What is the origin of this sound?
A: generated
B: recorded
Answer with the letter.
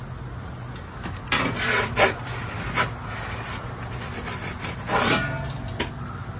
B